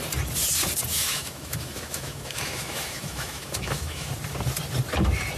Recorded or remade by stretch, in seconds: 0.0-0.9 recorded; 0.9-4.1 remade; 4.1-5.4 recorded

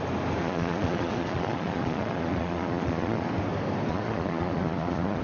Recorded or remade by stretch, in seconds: 0.0-0.4 recorded; 0.4-3.3 remade; 3.3-3.9 recorded; 3.9-5.2 remade

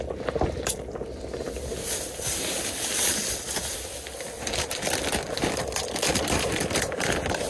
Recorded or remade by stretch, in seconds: 0.0-7.5 recorded

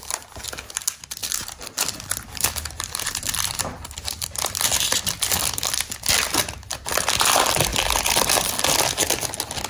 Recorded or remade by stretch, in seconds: 0.0-1.2 recorded; 1.2-5.3 remade; 5.3-9.7 recorded

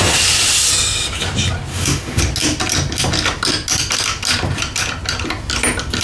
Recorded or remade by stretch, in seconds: 0.0-1.7 recorded; 1.7-2.2 remade; 2.2-6.0 recorded

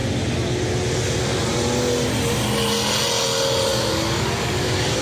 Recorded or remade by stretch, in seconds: 0.0-3.7 recorded; 3.7-5.0 remade